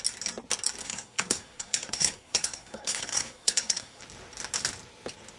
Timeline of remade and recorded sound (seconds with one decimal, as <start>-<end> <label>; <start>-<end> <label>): 0.0-0.8 recorded; 0.8-4.0 remade; 4.0-5.4 recorded